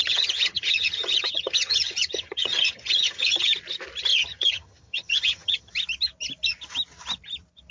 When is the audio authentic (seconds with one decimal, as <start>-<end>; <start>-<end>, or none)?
3.5-4.1; 5.7-7.7